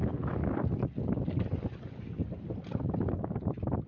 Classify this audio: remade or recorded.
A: recorded